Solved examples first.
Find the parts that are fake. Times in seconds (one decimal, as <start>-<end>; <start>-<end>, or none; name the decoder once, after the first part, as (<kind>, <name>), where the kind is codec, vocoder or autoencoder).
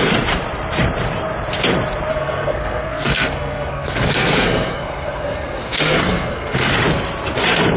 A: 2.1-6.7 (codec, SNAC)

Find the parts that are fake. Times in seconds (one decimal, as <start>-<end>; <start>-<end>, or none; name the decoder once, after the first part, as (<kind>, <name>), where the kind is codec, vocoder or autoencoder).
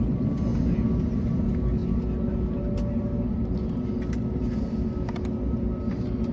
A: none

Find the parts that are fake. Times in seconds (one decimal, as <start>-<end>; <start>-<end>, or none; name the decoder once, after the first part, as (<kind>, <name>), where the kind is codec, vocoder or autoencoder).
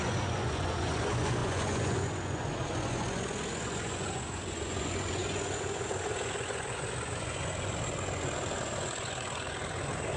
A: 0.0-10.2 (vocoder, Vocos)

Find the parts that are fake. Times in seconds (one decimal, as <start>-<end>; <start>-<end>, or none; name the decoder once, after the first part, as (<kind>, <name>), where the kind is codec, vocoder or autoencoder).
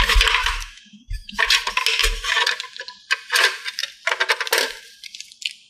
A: 0.4-1.4 (autoencoder, DAC-VAE)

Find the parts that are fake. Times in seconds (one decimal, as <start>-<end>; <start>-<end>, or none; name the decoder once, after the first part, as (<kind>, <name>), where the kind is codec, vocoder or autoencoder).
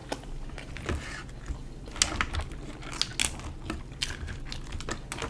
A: none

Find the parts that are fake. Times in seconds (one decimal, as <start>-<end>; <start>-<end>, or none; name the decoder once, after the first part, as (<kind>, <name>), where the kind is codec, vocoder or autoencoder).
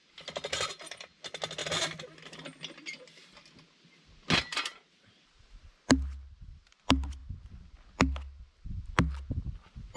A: 4.5-5.6 (vocoder, BigVGAN v2)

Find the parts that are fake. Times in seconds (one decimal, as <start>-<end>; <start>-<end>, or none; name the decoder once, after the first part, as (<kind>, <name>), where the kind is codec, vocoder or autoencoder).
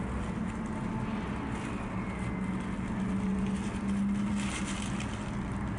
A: none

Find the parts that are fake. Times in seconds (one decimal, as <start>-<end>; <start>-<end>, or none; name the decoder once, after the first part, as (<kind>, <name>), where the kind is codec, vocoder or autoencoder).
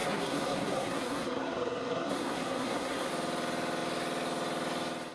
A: 0.0-3.1 (codec, SNAC)